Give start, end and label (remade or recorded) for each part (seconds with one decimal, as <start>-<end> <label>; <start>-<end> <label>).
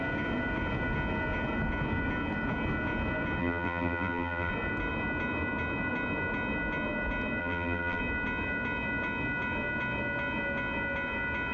0.0-3.4 recorded; 3.4-4.5 remade; 4.5-7.4 recorded; 7.4-8.0 remade; 8.0-11.5 recorded